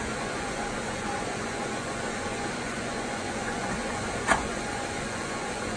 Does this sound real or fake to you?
fake